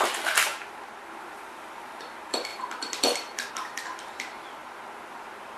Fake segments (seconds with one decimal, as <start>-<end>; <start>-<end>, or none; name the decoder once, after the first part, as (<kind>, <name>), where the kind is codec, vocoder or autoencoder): 0.0-0.5 (vocoder, BigVGAN v2); 1.1-5.6